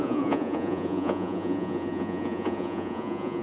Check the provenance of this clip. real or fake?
fake